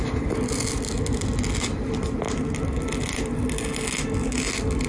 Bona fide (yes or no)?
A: yes